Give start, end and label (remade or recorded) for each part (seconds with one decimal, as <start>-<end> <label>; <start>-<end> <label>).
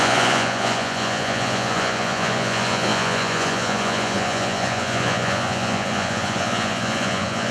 0.0-7.5 remade